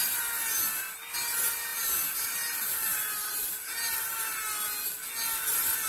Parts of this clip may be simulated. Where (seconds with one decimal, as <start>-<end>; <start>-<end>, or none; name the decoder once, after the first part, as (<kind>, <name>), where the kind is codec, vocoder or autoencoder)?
1.7-4.0 (vocoder, BigVGAN v2)